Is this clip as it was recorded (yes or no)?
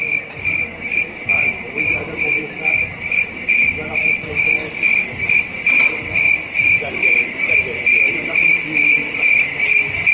no